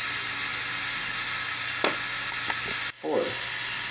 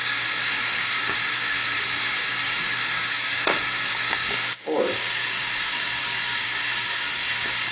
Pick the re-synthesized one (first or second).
second